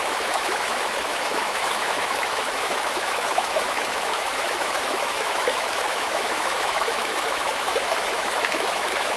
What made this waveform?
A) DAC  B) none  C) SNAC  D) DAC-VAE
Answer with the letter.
D